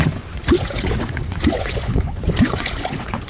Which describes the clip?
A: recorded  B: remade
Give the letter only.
B